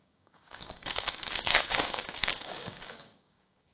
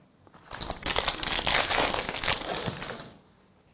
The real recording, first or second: second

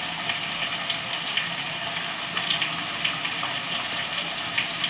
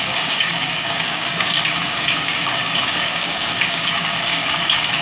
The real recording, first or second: first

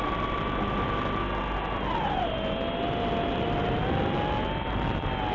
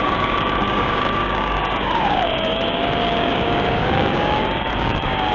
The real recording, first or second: first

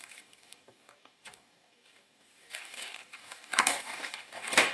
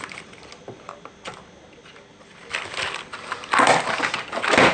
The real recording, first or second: second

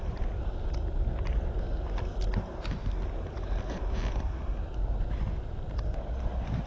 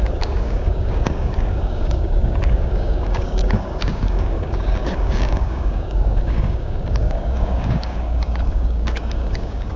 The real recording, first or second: first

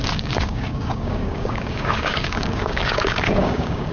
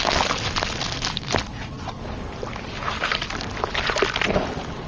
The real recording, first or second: second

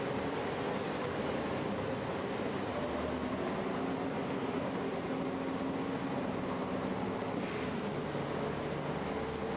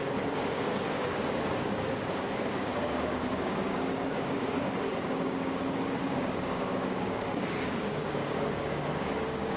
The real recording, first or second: first